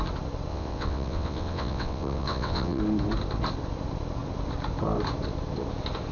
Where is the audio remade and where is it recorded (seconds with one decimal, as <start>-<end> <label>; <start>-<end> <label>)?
0.0-0.5 recorded; 0.5-2.8 remade; 2.8-6.1 recorded